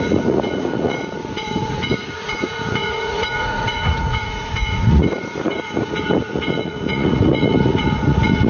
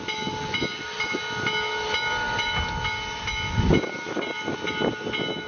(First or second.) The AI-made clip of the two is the first